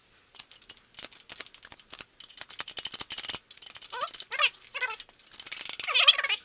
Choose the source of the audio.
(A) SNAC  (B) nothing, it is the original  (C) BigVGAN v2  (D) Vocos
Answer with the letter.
B